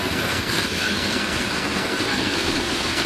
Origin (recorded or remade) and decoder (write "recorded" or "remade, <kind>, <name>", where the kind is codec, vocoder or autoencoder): remade, codec, SNAC